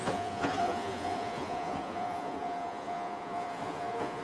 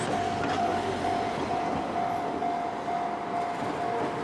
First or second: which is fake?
first